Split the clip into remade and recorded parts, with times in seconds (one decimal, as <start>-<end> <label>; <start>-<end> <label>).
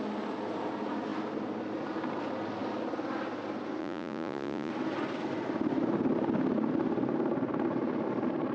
0.0-3.8 recorded; 3.8-4.7 remade; 4.7-8.5 recorded